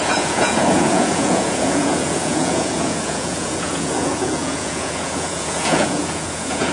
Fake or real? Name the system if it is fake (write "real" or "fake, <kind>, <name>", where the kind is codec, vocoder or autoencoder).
fake, vocoder, Vocos